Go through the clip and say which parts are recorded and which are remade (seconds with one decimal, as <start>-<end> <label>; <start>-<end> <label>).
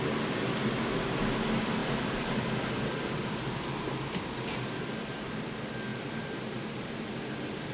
0.0-1.8 recorded; 1.8-3.6 remade; 3.6-5.9 recorded; 5.9-6.9 remade; 6.9-7.7 recorded